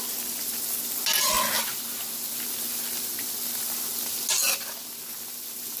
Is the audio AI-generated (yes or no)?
no